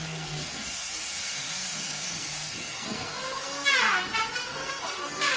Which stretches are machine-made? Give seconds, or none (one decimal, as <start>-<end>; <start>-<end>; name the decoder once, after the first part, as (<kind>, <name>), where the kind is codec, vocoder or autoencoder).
0.0-5.4 (codec, SNAC)